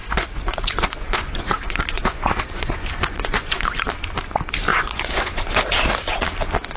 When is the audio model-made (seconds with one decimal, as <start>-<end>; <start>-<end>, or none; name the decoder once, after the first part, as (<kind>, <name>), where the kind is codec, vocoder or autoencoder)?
0.0-3.7 (vocoder, Vocos); 4.7-5.6